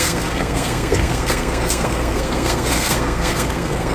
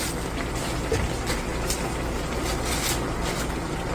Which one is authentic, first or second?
second